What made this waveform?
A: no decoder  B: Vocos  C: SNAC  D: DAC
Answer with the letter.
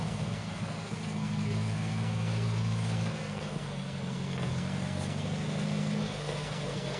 C